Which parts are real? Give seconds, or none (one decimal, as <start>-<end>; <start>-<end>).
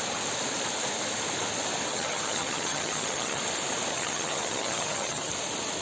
0.0-1.9; 3.4-3.9; 5.3-5.8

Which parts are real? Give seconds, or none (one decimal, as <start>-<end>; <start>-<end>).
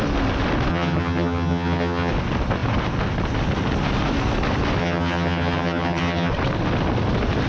0.0-0.7; 2.1-4.8; 6.3-7.5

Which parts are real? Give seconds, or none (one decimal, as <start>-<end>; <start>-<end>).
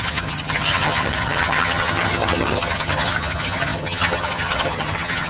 none